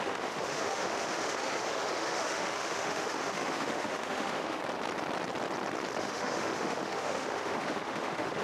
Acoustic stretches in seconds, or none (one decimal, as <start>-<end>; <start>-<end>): 4.6-6.0